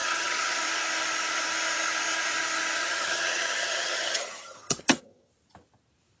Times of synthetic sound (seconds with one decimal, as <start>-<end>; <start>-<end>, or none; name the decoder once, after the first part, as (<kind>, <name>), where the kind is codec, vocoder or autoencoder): 0.0-0.6 (vocoder, HiFi-GAN); 2.8-5.3

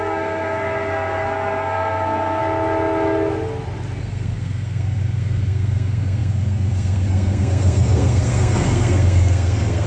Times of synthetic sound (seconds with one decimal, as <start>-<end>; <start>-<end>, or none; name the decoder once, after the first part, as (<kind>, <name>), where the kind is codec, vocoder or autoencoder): 0.0-2.4 (codec, SNAC); 4.0-9.9

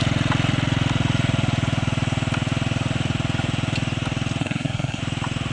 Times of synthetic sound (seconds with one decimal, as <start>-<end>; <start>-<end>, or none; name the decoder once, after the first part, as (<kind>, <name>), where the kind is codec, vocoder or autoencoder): 4.4-5.0 (codec, SNAC)

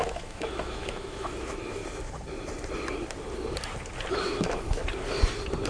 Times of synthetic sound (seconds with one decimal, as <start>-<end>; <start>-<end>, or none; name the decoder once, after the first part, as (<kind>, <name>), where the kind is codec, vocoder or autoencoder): 0.0-1.8 (autoencoder, DAC-VAE); 4.1-4.8

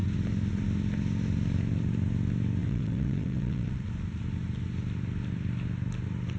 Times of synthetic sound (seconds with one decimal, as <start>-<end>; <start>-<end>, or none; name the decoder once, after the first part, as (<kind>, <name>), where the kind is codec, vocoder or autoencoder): 2.6-3.9 (vocoder, WaveNeXt)

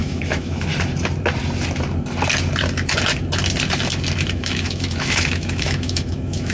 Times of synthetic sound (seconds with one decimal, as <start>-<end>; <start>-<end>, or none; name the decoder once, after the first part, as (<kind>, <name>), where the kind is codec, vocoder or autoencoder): 0.0-0.7 (autoencoder, DAC-VAE); 4.3-6.5

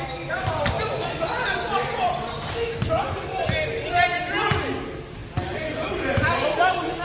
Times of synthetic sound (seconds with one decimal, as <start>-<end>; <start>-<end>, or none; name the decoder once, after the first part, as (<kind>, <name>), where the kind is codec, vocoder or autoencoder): none

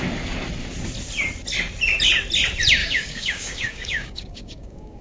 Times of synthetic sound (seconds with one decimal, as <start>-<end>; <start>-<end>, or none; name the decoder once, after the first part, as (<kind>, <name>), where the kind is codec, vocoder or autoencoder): 2.8-5.0 (codec, DAC)